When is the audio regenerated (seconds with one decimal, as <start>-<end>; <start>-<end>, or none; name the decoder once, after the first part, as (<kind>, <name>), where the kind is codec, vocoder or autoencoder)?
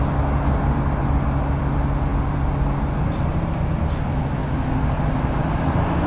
none